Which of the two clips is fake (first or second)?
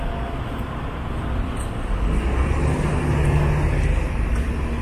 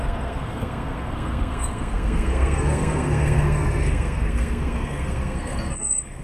second